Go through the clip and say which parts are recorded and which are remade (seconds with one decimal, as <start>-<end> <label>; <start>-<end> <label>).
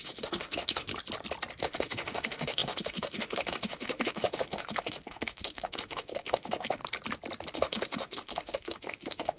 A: 0.0-0.9 remade; 0.9-1.6 recorded; 1.6-6.8 remade; 6.8-7.5 recorded; 7.5-9.4 remade